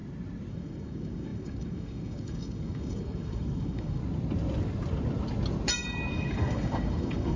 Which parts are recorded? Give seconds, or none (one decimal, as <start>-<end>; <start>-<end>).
0.0-0.5; 4.0-6.1